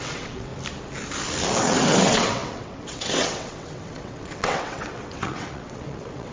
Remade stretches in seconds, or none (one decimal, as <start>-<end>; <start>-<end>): 0.0-0.5; 1.6-6.3